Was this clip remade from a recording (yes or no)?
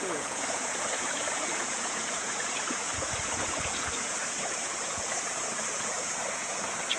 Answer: yes